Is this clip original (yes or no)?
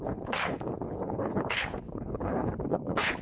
no